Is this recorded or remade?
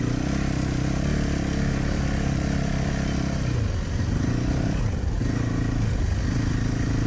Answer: recorded